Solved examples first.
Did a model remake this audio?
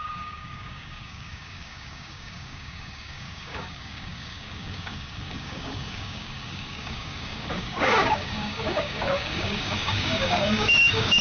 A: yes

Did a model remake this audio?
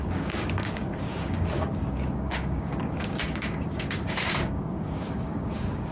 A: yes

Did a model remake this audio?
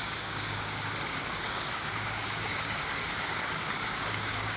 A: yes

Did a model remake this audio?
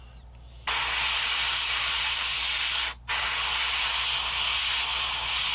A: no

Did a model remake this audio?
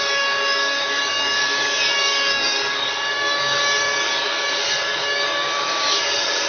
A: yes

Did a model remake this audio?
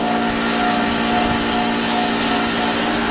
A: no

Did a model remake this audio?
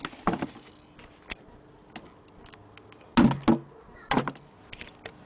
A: no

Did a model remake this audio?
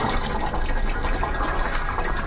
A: no